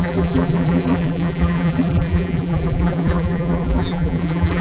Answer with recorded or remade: remade